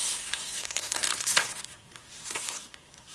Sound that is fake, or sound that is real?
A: fake